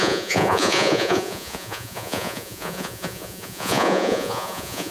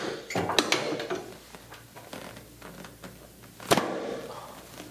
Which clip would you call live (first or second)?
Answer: second